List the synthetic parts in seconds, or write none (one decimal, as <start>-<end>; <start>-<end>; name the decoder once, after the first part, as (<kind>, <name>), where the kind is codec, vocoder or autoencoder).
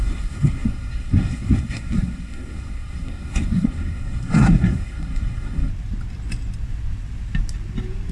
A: 0.0-5.7 (codec, SNAC)